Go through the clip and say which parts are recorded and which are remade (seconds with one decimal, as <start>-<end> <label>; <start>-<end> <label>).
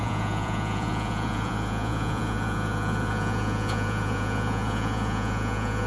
0.0-5.9 remade